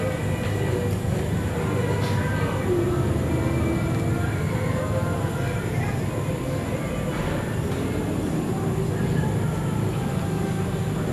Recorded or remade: recorded